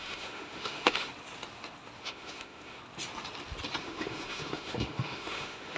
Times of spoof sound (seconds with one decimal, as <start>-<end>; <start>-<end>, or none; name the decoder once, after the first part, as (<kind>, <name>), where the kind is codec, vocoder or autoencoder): 0.0-1.1 (autoencoder, DAC-VAE); 2.0-2.8; 3.8-5.8